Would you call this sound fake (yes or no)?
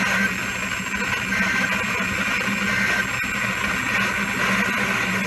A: no